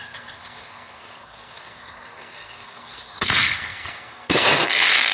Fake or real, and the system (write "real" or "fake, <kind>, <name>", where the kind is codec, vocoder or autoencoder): fake, codec, SNAC